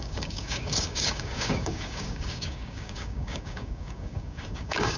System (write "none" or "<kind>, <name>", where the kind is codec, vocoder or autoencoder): codec, DAC